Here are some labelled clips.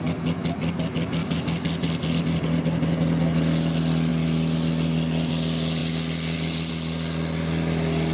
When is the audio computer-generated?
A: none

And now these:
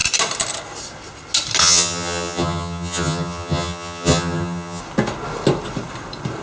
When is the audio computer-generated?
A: 1.6-4.8 (vocoder, HiFi-GAN)

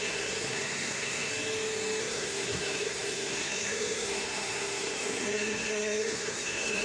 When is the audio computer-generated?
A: 0.0-1.3 (codec, SNAC); 2.0-6.8

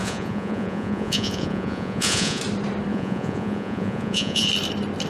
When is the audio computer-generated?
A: 0.0-2.4 (vocoder, Vocos); 2.9-4.5

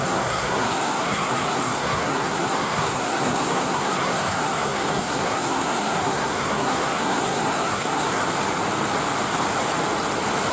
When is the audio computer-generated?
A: 0.0-8.2 (codec, SNAC)

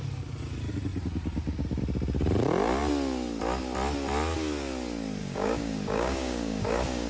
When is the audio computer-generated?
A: 5.2-7.1 (codec, DAC)

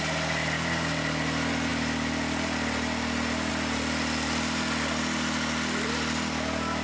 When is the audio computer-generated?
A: none

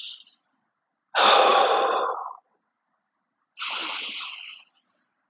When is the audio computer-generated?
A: 1.5-2.0 (vocoder, BigVGAN v2); 3.8-4.6